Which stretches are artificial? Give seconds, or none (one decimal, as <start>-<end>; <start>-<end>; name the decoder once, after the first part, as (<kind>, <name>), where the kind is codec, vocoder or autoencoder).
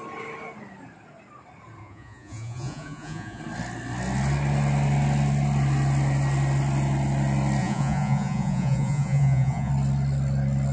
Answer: 1.8-3.4 (vocoder, Vocos); 7.6-9.7